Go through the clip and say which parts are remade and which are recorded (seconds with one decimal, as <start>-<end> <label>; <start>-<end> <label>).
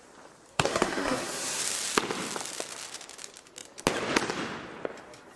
0.0-0.5 recorded; 0.5-1.6 remade; 1.6-5.4 recorded